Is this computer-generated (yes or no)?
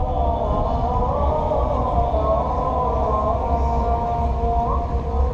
no